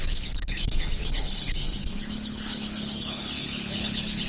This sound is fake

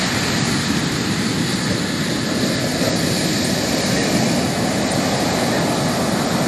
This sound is real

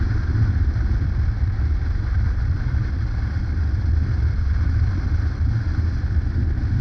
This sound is real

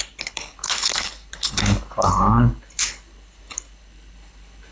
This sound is fake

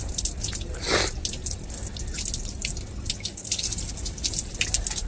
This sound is real